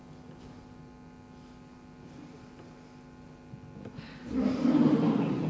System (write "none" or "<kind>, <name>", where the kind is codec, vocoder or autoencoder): none